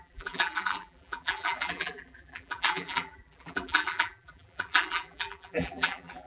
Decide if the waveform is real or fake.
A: fake